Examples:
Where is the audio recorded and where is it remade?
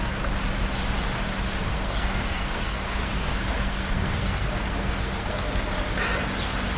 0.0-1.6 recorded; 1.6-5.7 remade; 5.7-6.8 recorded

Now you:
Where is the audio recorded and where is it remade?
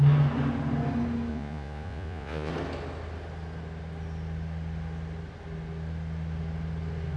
0.0-1.3 recorded; 1.3-2.5 remade; 2.5-7.2 recorded